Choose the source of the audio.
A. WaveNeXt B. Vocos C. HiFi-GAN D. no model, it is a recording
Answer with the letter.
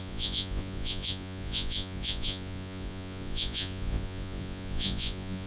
B